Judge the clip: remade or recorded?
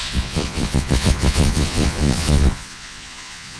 remade